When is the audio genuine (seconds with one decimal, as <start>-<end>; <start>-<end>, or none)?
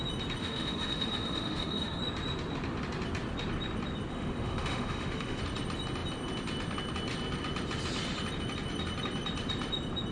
0.0-0.4; 2.0-4.1; 5.4-10.1